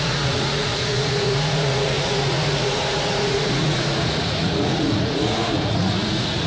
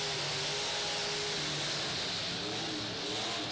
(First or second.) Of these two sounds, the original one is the second